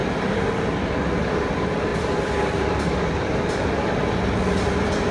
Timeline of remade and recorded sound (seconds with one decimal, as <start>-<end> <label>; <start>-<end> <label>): 0.0-5.1 recorded